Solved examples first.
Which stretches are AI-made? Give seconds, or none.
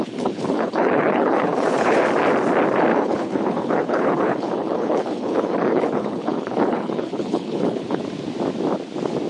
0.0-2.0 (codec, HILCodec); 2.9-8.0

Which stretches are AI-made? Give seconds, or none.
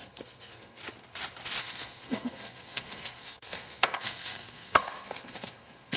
0.0-0.8 (codec, SNAC); 1.6-6.0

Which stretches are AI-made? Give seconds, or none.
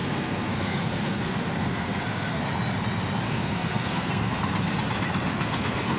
0.0-2.5 (codec, SNAC); 3.3-4.2; 5.3-6.0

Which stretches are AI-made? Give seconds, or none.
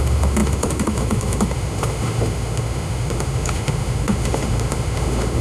0.0-5.4 (autoencoder, DAC-VAE)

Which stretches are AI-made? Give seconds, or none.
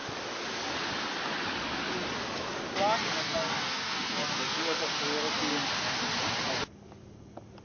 3.2-4.8 (codec, SNAC)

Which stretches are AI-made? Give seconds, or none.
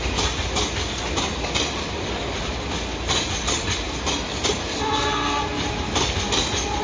4.6-5.4 (codec, SNAC)